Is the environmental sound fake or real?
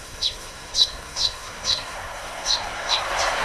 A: fake